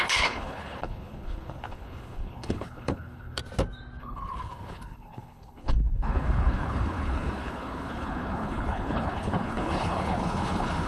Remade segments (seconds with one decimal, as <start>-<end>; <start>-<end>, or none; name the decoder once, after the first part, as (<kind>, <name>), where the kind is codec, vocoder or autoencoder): 0.0-3.4 (codec, HILCodec); 4.0-10.9